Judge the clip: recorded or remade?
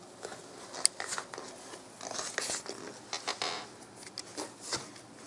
recorded